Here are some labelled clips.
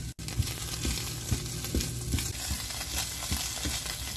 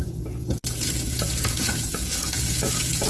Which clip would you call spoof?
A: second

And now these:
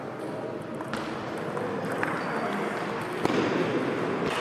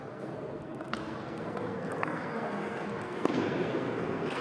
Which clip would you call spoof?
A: second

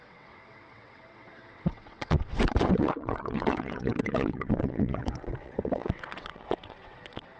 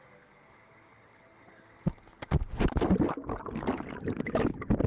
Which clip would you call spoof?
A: first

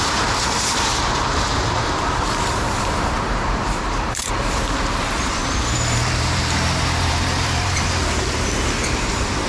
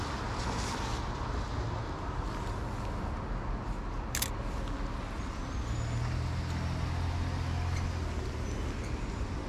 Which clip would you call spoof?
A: first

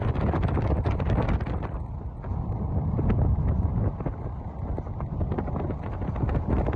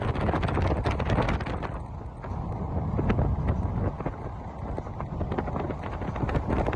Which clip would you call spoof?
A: first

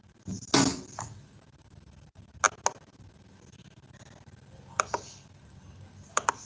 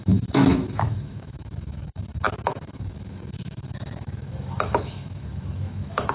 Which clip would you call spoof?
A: second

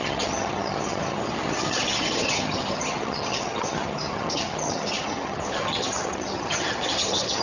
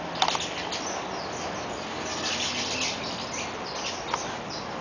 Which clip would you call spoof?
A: first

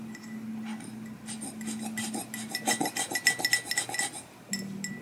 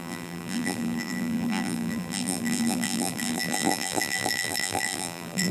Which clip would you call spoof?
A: second